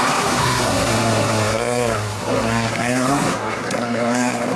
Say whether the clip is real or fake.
fake